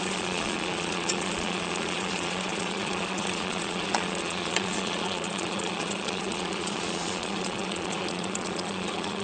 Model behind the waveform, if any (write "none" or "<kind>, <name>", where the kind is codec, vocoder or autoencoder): vocoder, Vocos